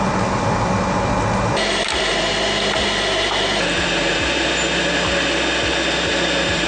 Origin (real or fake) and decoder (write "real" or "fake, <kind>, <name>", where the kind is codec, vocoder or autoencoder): real